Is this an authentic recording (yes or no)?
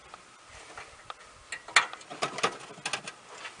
yes